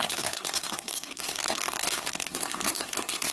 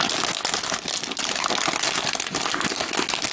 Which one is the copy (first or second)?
first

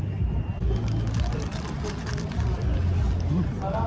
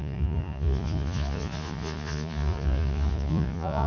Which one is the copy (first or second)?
second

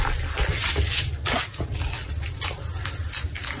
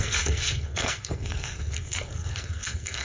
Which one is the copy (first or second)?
second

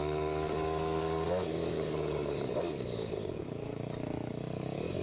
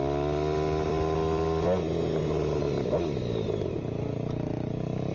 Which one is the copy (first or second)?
first